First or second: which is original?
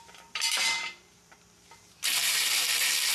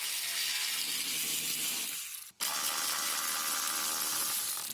second